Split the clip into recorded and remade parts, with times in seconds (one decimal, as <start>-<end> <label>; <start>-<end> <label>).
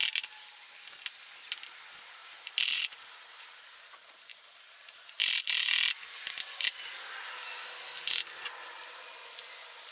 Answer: 0.0-2.2 recorded; 2.2-5.4 remade; 5.4-9.9 recorded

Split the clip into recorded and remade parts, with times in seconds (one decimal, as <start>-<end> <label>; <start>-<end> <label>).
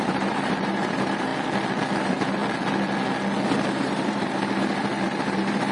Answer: 0.0-1.3 remade; 1.3-2.0 recorded; 2.0-2.4 remade; 2.4-3.7 recorded; 3.7-5.7 remade